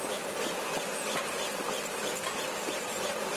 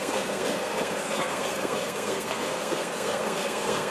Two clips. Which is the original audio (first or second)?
first